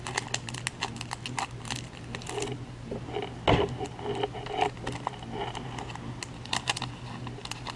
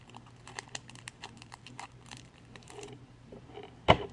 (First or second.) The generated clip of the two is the second